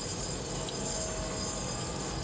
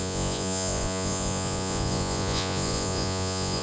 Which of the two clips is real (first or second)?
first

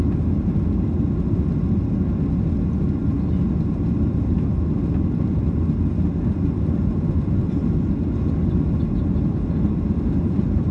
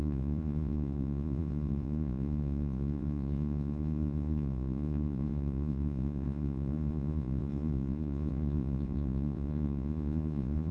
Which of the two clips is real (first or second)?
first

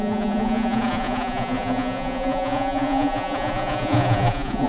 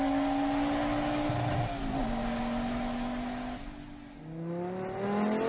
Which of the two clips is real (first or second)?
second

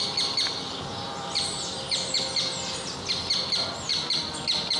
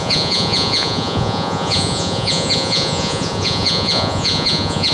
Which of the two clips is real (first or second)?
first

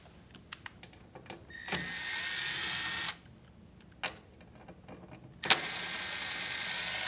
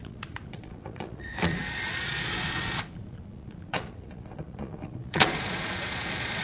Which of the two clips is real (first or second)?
first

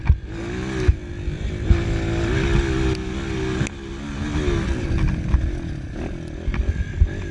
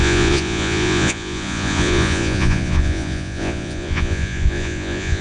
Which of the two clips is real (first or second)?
first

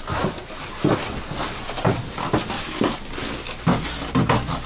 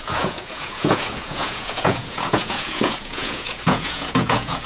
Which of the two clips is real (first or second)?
first